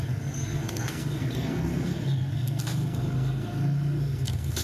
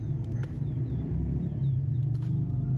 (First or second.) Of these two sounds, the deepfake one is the first